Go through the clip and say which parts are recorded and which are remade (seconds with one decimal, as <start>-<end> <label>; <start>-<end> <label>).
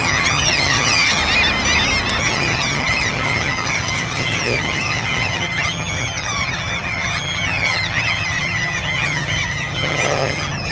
0.0-1.2 remade; 1.2-2.2 recorded; 2.2-10.7 remade